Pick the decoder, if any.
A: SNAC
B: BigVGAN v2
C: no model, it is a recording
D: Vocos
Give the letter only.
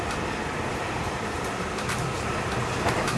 B